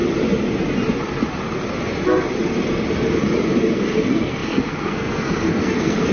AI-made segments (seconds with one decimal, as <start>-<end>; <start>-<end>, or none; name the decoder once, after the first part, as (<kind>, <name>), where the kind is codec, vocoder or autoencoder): 3.7-6.1 (codec, SNAC)